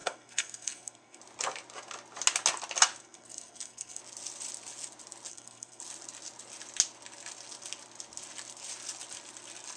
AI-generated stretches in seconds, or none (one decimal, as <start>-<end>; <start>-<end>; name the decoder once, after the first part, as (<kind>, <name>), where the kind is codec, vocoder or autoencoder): 0.0-1.2 (codec, SNAC); 3.0-4.0; 5.3-5.8